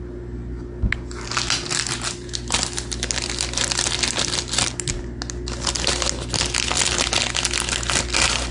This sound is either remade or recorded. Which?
recorded